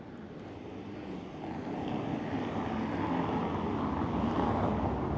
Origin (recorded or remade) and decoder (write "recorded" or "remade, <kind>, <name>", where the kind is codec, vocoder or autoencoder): recorded